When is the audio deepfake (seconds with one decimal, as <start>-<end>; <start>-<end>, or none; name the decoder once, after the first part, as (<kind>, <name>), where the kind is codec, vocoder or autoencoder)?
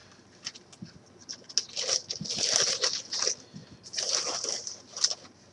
none